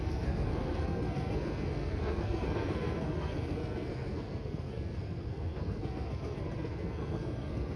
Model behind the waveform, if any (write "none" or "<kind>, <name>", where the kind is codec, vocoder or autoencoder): codec, SNAC